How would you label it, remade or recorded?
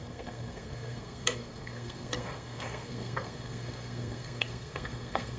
remade